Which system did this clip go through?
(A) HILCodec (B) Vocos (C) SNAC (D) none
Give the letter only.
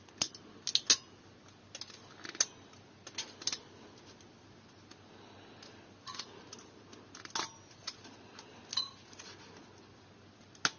D